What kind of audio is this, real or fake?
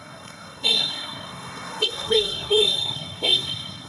fake